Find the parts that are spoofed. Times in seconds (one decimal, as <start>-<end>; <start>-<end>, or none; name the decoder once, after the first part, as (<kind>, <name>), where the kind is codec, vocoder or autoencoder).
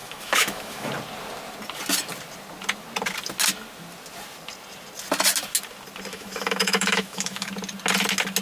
0.0-0.9 (autoencoder, DAC-VAE); 6.1-7.5